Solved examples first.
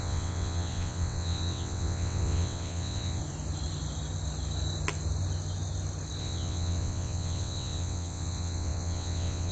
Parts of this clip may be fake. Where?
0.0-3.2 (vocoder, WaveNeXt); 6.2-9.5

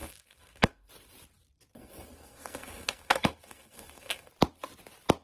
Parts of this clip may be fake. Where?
0.0-0.9 (codec, SNAC); 1.7-4.3

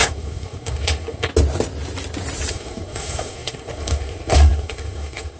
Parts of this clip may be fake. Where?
0.0-1.3 (codec, SNAC); 2.5-5.4

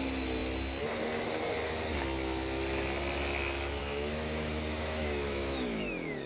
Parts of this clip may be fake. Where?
3.8-6.3 (autoencoder, DAC-VAE)

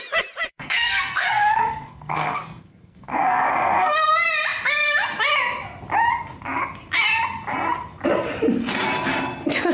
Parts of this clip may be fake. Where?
0.5-4.0 (codec, SNAC)

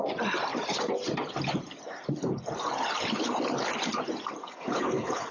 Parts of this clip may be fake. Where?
4.4-5.3 (codec, HILCodec)

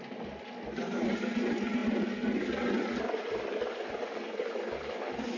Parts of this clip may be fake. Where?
none